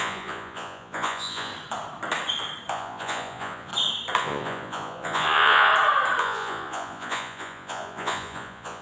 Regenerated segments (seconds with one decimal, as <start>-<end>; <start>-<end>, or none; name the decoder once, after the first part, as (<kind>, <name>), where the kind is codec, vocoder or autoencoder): 0.0-1.5 (vocoder, Vocos); 2.7-3.7; 4.2-5.7; 6.2-8.8